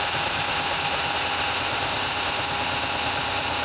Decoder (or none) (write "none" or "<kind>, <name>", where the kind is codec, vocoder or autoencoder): none